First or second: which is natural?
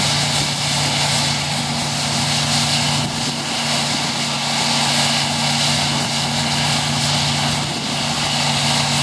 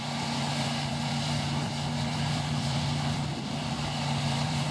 first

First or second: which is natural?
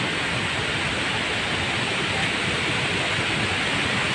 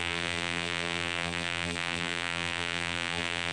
first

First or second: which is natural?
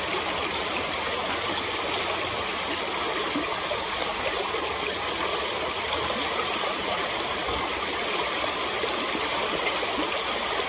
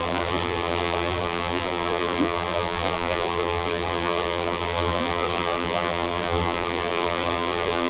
first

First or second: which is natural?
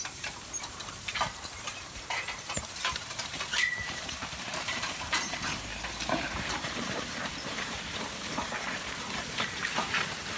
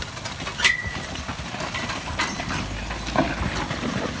second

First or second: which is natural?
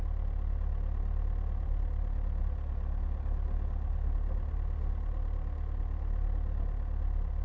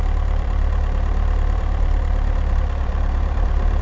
first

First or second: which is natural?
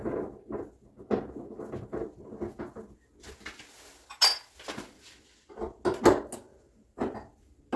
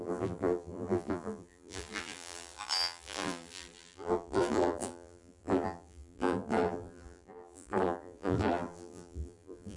first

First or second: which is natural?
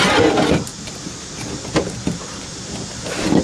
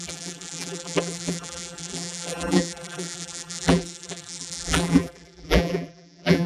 first